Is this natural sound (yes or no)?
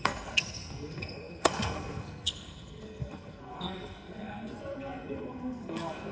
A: no